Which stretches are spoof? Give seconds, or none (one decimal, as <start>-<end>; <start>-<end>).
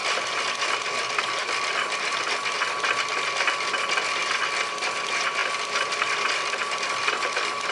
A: 0.0-0.8; 5.4-6.8